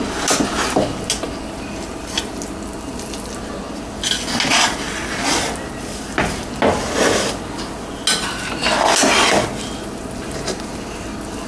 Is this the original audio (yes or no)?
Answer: yes